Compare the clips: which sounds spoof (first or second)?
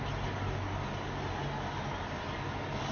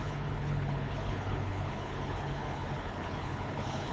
second